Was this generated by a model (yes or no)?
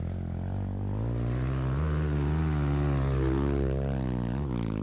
no